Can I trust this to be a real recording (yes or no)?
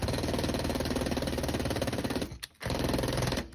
yes